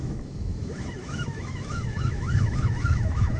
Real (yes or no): no